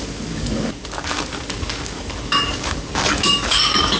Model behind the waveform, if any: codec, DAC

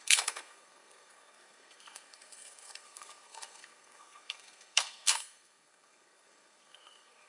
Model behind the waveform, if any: codec, SNAC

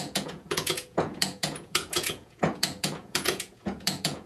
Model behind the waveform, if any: vocoder, Vocos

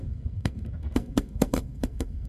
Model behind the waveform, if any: codec, SNAC